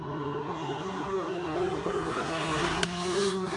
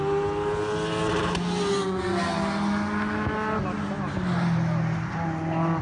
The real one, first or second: second